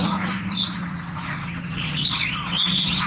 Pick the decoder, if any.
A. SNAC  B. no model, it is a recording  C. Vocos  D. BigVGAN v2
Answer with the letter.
C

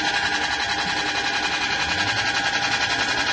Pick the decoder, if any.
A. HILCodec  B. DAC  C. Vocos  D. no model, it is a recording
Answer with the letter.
D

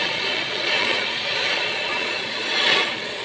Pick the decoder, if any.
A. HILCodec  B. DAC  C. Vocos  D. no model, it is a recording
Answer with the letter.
C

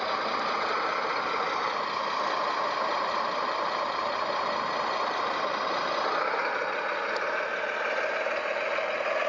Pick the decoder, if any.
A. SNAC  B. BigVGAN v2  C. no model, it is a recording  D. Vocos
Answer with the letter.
C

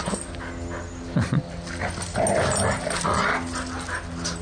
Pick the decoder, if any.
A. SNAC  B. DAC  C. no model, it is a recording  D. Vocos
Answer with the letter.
C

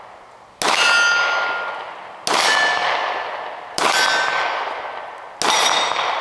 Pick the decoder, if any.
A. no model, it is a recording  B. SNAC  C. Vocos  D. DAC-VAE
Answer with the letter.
A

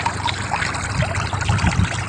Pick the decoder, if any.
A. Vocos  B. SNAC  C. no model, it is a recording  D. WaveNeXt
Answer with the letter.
C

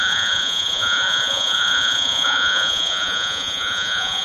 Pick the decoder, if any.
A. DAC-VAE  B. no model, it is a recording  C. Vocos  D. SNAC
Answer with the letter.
C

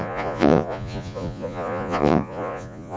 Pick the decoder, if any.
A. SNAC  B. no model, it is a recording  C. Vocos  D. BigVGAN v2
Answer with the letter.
C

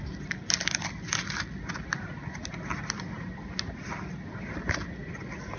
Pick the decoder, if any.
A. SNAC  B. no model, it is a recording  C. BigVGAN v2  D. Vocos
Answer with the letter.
B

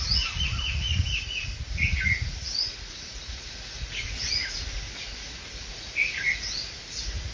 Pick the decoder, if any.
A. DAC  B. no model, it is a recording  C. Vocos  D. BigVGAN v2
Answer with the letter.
C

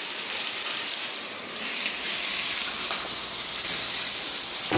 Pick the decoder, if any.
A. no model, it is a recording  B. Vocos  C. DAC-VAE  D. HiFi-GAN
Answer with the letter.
A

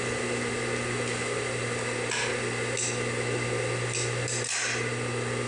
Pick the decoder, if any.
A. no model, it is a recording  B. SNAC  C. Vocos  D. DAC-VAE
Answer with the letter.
A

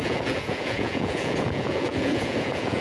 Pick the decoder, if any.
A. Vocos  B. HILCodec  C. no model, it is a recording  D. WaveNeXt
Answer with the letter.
A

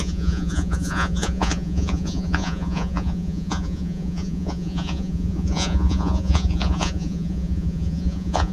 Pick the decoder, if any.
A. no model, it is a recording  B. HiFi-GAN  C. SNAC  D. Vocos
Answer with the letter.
D